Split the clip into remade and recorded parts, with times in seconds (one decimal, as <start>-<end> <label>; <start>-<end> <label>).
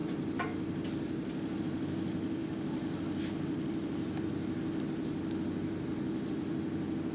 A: 0.0-7.1 recorded